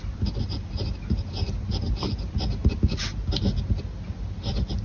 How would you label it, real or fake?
real